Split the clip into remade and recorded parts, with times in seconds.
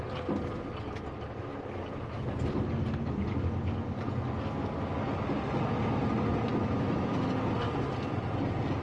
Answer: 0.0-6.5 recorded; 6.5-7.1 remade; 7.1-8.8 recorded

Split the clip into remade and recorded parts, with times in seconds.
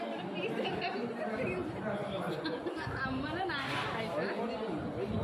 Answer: 0.0-5.2 recorded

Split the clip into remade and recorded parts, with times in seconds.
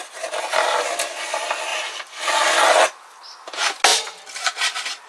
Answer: 0.0-5.1 recorded